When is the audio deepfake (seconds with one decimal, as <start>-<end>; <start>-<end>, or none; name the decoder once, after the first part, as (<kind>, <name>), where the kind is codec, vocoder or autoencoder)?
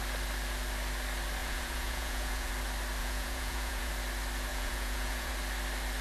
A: 1.4-2.5 (vocoder, Vocos); 3.0-3.9; 4.5-5.3